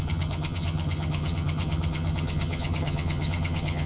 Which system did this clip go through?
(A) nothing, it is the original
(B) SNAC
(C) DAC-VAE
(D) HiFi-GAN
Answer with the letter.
D